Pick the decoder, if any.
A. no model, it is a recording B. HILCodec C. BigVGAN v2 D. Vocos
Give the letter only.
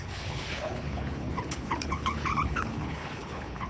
B